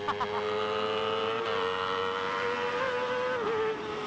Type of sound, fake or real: real